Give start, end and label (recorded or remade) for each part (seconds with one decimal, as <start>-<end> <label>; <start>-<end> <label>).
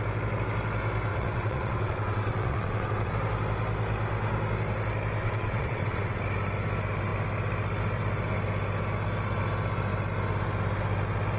0.0-1.1 recorded; 1.1-3.1 remade; 3.1-5.2 recorded; 5.2-6.2 remade; 6.2-11.4 recorded